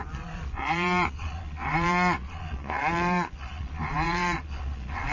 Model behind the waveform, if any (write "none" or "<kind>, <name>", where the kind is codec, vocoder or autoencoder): vocoder, Vocos